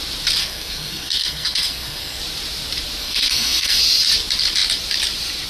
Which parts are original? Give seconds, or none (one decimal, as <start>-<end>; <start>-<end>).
0.0-0.4; 2.2-3.0; 3.8-5.5